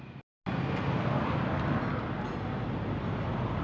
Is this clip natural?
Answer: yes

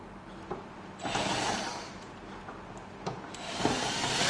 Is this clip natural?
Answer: yes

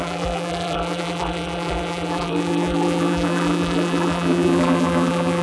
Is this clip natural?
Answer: no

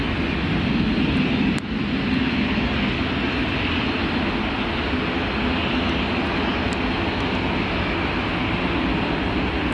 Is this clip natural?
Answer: yes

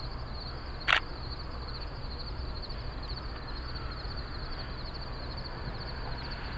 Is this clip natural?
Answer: yes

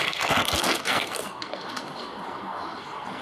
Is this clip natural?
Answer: no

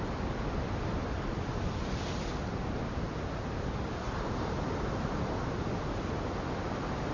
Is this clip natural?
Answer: yes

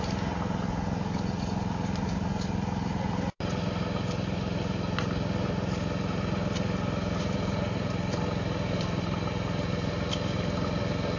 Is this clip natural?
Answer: yes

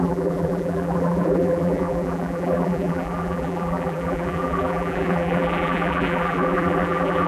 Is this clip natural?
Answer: no